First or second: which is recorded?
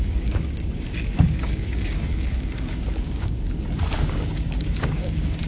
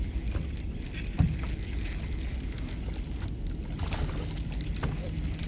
second